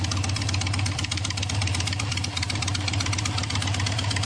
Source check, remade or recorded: remade